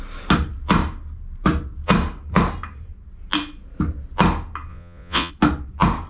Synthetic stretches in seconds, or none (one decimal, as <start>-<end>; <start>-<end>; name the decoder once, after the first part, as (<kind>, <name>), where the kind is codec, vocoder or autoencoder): 4.7-5.3 (vocoder, Vocos)